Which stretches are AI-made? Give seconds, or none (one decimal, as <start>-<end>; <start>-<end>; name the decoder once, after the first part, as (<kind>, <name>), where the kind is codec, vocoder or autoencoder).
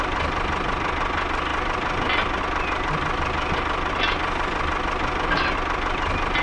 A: none